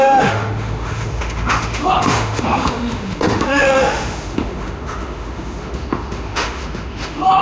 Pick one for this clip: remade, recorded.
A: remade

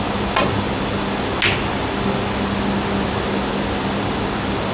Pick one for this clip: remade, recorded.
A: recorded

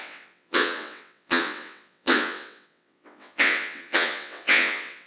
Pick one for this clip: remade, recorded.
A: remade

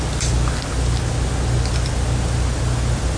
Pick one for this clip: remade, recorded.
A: recorded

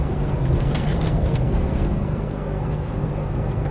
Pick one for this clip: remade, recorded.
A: remade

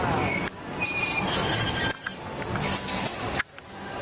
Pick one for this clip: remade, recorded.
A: recorded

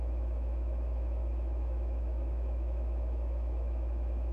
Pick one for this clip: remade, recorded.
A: remade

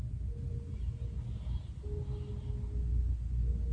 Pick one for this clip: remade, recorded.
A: recorded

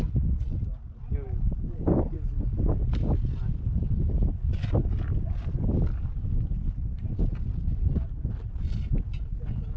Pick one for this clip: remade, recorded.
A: recorded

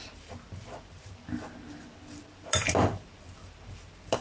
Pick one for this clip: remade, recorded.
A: remade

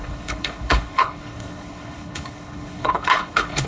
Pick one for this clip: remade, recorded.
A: remade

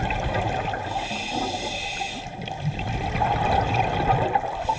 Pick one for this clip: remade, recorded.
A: recorded